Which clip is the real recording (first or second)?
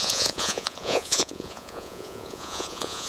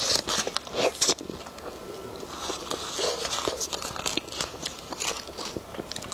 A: second